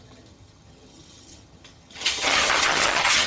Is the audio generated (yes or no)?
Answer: yes